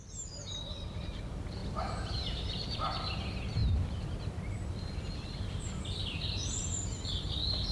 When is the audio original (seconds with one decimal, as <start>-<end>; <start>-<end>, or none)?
3.6-4.7; 6.0-6.6